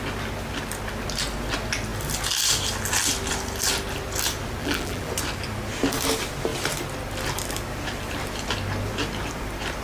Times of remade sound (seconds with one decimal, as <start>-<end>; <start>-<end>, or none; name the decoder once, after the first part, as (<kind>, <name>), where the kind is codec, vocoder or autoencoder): 4.6-5.1 (vocoder, BigVGAN v2)